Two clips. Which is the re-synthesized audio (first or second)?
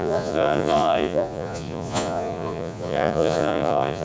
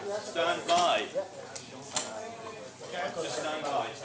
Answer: first